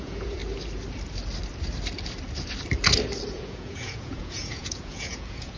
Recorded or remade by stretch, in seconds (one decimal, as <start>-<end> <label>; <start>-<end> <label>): 0.0-0.4 remade; 0.4-3.3 recorded; 3.3-5.6 remade

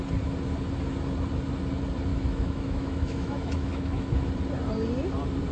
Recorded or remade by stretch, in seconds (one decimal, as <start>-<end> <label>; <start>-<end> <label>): 0.0-2.1 recorded; 2.1-4.3 remade; 4.3-5.5 recorded